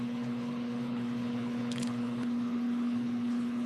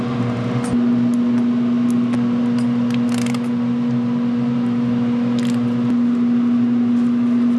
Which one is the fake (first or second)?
first